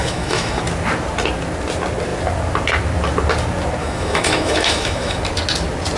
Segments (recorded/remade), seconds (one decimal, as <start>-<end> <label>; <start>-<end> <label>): 0.0-0.6 remade; 0.6-3.8 recorded; 3.8-5.2 remade; 5.2-6.0 recorded